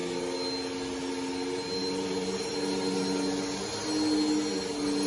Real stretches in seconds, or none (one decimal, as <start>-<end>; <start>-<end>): 0.0-1.8; 2.4-5.1